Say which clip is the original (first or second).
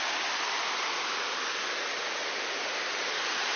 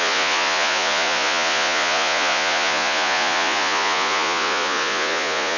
first